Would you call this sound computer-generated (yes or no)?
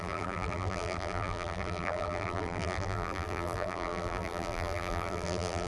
yes